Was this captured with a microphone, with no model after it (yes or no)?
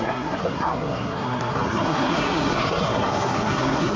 no